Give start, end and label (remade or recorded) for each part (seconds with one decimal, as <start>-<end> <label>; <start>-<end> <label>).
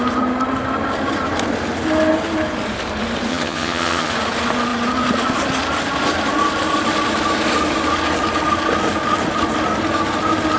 0.0-3.3 recorded; 3.3-4.1 remade; 4.1-10.6 recorded